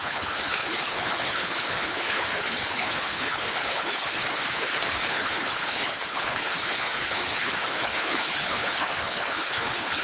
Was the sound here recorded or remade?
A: remade